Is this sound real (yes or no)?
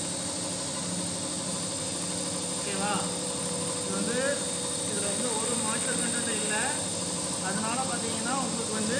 no